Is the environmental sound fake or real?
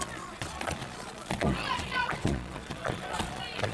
fake